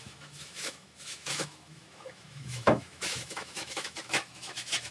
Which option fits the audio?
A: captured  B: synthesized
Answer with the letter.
B